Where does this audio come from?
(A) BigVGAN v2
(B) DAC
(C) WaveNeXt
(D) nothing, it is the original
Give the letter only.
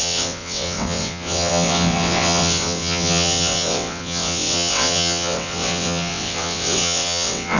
C